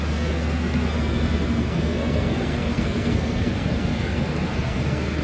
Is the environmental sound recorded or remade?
remade